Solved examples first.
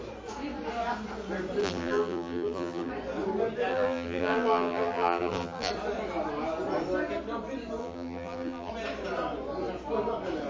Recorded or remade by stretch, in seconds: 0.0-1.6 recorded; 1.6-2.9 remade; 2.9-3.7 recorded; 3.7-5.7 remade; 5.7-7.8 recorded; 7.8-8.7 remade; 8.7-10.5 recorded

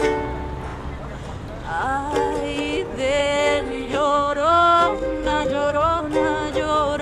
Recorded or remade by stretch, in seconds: 0.0-3.2 recorded; 3.2-6.0 remade; 6.0-7.0 recorded

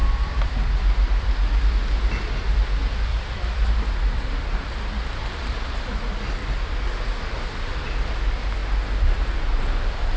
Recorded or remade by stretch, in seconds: 0.0-1.3 remade; 1.3-3.1 recorded; 3.1-5.7 remade; 5.7-10.2 recorded